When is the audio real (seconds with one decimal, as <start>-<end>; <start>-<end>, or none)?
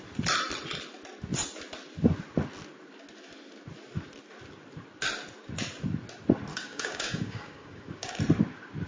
0.0-6.5; 8.2-8.9